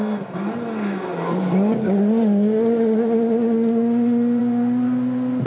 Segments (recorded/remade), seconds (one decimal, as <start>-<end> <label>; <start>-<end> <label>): 0.0-5.5 recorded